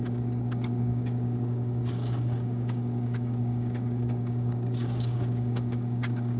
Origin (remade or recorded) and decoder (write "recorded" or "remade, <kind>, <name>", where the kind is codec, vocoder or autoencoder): remade, codec, DAC